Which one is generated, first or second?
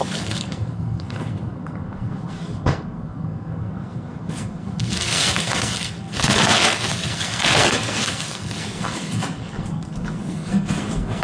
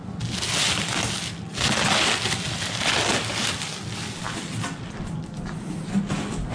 first